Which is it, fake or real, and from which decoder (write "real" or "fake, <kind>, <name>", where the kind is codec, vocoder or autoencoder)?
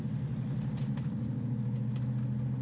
real